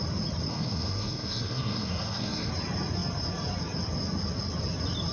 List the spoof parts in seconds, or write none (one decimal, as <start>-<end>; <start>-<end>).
0.5-2.5